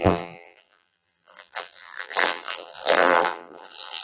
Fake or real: fake